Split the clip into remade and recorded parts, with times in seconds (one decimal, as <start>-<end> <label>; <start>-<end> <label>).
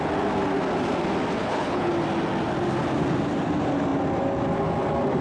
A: 0.0-1.4 recorded; 1.4-1.9 remade; 1.9-5.2 recorded